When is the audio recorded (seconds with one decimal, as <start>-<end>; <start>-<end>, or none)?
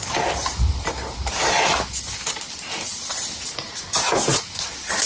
0.0-5.1